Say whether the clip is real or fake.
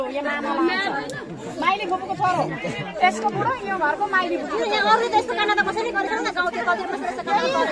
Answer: real